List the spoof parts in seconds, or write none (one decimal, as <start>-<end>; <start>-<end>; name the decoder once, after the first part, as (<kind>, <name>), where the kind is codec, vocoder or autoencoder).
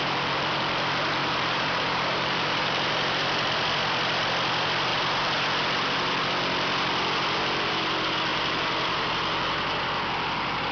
1.2-3.2 (vocoder, BigVGAN v2); 8.3-9.1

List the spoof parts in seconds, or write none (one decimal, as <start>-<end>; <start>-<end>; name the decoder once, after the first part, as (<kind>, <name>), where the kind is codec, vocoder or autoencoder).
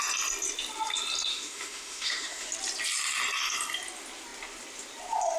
1.3-2.5 (autoencoder, DAC-VAE)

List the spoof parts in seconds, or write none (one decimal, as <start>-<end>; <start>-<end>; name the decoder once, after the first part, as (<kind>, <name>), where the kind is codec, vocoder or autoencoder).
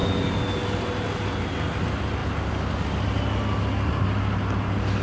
none